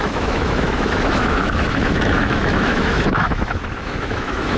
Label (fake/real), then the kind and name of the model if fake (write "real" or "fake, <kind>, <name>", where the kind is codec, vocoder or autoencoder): fake, autoencoder, DAC-VAE